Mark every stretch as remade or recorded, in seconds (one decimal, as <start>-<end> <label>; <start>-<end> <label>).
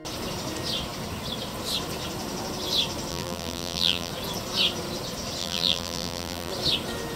0.0-3.1 recorded; 3.1-4.1 remade; 4.1-5.4 recorded; 5.4-6.5 remade; 6.5-7.2 recorded